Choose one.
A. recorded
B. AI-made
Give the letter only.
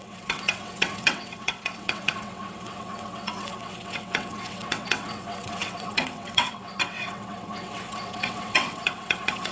B